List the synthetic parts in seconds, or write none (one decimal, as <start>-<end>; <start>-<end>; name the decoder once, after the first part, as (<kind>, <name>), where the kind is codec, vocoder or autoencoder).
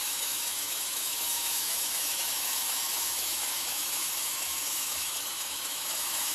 0.0-6.3 (autoencoder, DAC-VAE)